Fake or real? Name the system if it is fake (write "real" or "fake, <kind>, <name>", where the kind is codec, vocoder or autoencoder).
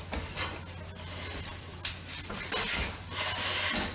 real